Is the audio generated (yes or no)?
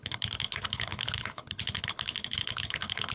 yes